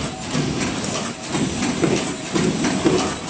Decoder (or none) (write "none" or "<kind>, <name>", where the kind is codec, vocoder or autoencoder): none